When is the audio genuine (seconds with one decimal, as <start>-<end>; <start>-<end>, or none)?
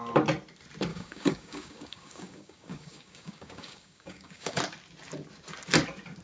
0.0-0.9; 4.6-6.2